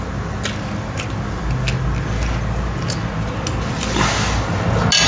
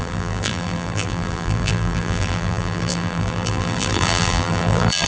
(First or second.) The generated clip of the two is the second